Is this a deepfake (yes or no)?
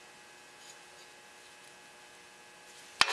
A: no